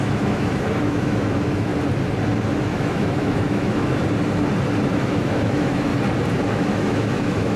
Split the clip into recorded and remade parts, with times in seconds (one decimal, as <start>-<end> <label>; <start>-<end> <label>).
0.0-1.7 remade; 1.7-2.6 recorded; 2.6-4.0 remade; 4.0-4.9 recorded; 4.9-5.9 remade; 5.9-6.5 recorded; 6.5-7.6 remade